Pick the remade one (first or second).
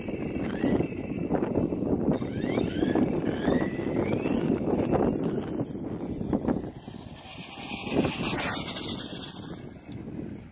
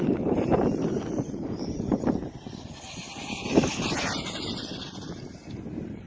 second